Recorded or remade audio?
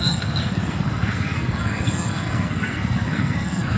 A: remade